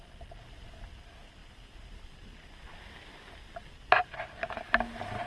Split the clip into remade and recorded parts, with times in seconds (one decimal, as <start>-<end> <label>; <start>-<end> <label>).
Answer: 0.0-5.3 recorded